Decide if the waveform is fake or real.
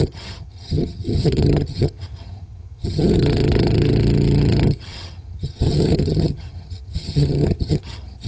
fake